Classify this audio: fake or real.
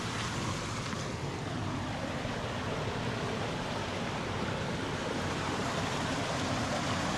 real